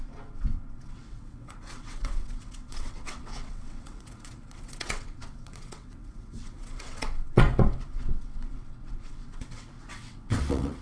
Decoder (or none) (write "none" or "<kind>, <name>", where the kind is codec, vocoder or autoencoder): vocoder, WaveNeXt